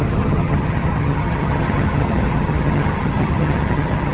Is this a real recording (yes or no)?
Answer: no